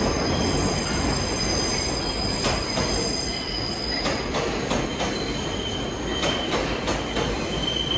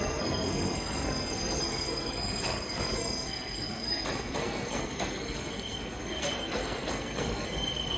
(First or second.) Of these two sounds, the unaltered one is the first